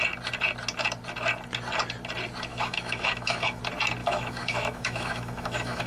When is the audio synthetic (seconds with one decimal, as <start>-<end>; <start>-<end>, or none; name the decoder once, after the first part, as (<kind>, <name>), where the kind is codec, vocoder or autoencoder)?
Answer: 2.5-3.6 (autoencoder, DAC-VAE); 4.0-5.9